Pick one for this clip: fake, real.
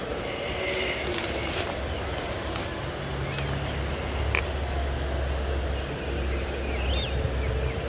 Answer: real